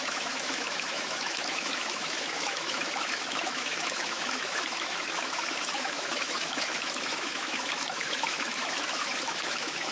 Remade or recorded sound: remade